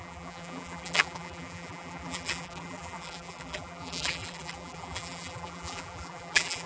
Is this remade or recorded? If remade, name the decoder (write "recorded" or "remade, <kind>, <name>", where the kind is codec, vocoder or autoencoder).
remade, vocoder, BigVGAN v2